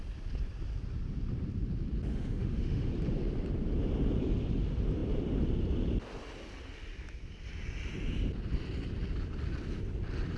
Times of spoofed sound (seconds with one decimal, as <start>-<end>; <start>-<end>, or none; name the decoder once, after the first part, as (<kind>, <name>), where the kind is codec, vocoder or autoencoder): 2.1-2.9 (autoencoder, DAC-VAE)